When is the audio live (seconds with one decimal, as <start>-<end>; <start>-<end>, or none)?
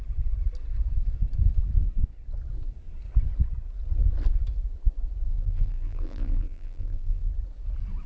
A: 0.0-5.3; 7.3-8.1